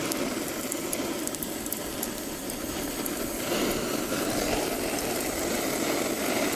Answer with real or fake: real